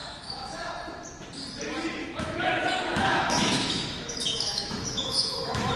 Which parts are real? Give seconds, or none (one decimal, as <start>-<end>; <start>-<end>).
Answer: 0.7-2.0